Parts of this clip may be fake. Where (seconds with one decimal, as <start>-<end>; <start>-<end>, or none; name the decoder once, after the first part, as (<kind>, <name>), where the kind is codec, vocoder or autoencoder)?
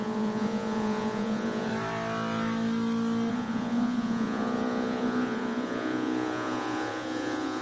0.0-1.7 (vocoder, Vocos); 3.3-7.6